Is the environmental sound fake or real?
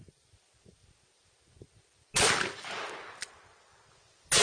real